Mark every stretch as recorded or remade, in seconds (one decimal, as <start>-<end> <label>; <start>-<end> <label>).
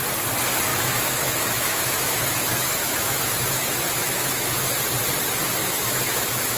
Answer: 0.0-0.7 recorded; 0.7-4.7 remade; 4.7-5.6 recorded; 5.6-6.6 remade